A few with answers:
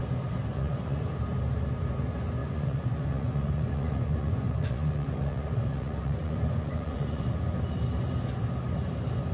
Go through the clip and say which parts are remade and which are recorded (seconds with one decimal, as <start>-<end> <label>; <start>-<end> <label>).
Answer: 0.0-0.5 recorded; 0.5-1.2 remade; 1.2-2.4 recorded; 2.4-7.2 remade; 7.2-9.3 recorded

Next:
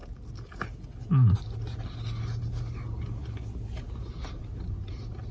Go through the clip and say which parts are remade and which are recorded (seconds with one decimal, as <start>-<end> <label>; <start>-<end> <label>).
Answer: 0.0-5.3 recorded

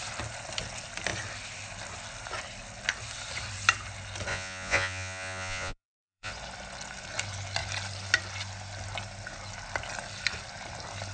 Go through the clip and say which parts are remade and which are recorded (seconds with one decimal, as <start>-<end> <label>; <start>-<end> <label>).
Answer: 0.0-4.3 recorded; 4.3-6.3 remade; 6.3-11.1 recorded

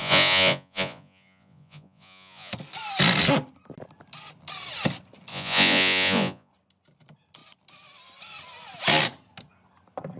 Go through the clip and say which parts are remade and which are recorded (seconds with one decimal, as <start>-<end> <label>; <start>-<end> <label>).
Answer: 0.0-2.5 remade; 2.5-5.3 recorded; 5.3-6.5 remade; 6.5-10.2 recorded

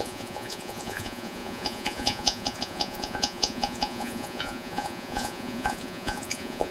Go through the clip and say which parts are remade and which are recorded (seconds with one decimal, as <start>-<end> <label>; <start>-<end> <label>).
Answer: 0.0-6.7 remade